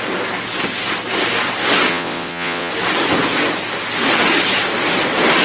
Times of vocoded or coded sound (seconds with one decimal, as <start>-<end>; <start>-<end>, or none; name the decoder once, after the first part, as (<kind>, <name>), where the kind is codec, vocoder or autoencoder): 1.9-2.7 (vocoder, WaveNeXt)